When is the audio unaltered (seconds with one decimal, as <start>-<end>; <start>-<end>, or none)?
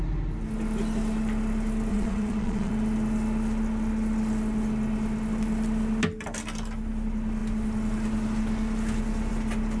0.0-1.9; 2.7-9.8